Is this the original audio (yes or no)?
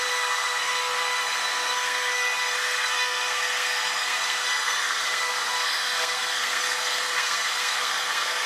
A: no